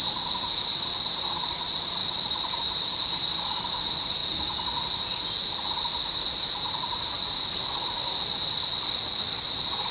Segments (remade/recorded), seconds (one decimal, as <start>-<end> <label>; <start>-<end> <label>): 0.0-4.2 remade; 4.2-7.5 recorded; 7.5-9.9 remade